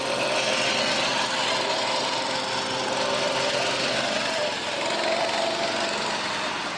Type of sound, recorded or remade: recorded